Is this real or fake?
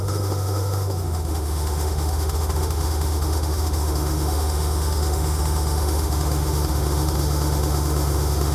fake